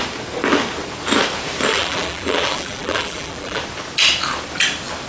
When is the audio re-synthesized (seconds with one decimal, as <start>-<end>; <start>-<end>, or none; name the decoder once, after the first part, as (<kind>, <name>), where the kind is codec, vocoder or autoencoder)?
1.7-3.6 (vocoder, BigVGAN v2)